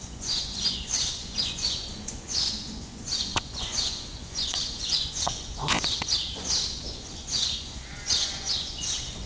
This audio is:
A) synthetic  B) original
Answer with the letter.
A